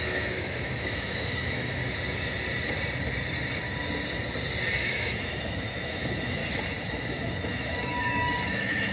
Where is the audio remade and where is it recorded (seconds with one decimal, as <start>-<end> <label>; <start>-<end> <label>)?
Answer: 0.0-1.8 remade; 1.8-4.8 recorded; 4.8-6.4 remade; 6.4-6.9 recorded; 6.9-8.9 remade